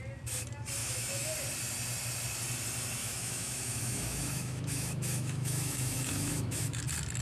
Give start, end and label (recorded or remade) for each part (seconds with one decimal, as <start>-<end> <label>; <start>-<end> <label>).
0.0-0.8 recorded; 0.8-1.3 remade; 1.3-3.0 recorded; 3.0-6.8 remade; 6.8-7.2 recorded